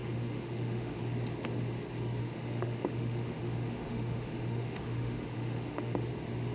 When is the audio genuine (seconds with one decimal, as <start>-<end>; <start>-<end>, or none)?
1.0-2.2; 6.1-6.5